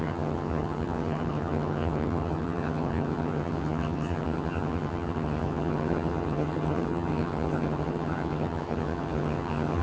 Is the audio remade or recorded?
remade